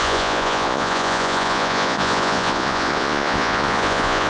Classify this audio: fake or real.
fake